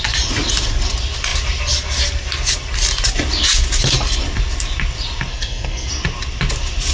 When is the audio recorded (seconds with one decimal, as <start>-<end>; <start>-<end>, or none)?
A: 0.0-5.3; 5.9-6.9